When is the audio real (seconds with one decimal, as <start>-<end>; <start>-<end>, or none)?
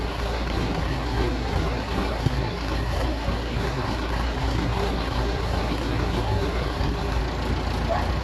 7.2-8.2